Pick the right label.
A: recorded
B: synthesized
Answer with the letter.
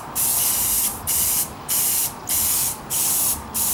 B